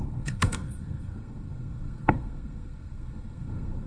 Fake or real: fake